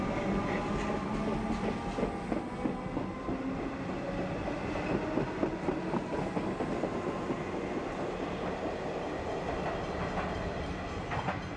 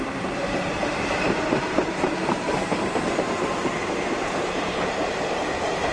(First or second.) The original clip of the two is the first